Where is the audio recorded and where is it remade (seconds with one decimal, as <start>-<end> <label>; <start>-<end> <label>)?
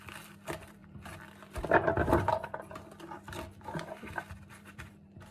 0.0-5.3 remade